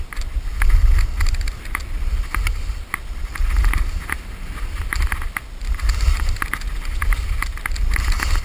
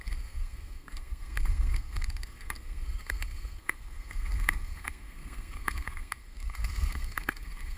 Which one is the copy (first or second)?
second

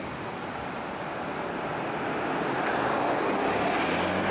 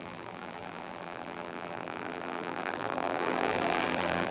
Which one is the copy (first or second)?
second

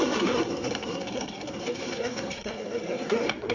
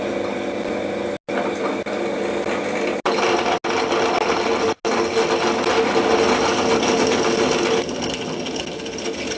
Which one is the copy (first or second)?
first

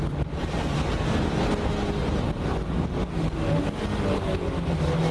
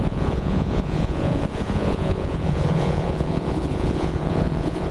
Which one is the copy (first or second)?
second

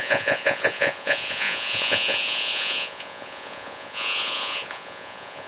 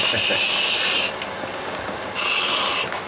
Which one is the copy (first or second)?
first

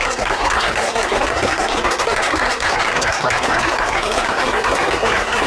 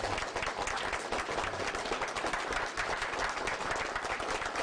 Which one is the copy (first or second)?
first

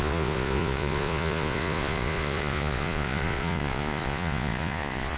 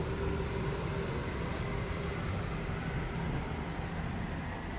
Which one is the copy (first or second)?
first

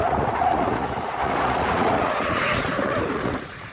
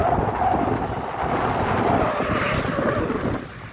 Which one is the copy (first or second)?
first